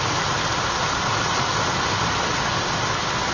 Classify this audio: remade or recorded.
recorded